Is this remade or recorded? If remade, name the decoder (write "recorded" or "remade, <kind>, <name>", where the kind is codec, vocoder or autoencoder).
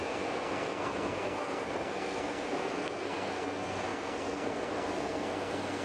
remade, codec, SNAC